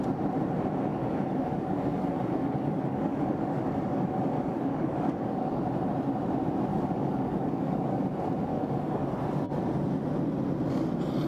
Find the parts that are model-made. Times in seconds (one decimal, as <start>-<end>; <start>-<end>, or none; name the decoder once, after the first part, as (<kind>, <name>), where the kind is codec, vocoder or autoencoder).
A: 0.9-5.6 (codec, DAC); 6.7-8.0; 8.5-9.1